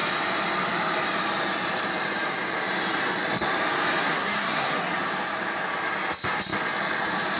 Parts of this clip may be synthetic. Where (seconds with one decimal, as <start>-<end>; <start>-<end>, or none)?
4.0-4.9